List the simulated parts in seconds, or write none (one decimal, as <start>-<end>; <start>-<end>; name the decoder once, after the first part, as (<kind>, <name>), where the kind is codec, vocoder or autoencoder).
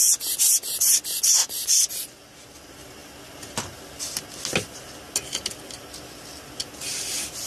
none